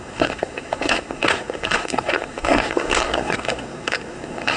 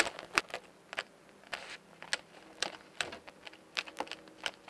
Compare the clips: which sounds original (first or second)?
second